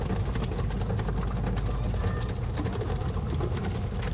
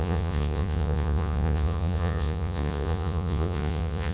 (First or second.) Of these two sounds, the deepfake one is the second